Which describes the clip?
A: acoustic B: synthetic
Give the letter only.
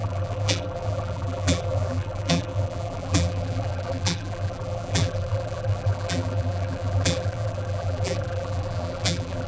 B